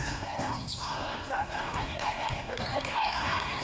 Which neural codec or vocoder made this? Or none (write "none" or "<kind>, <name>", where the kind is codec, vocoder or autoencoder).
codec, SNAC